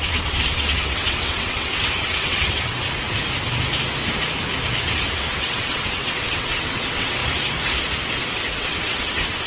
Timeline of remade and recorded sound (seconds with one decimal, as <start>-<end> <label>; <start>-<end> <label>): 0.0-2.7 remade; 2.7-5.3 recorded; 5.3-7.2 remade; 7.2-8.5 recorded; 8.5-9.5 remade